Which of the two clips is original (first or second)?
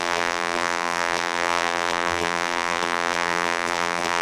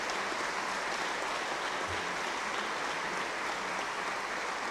second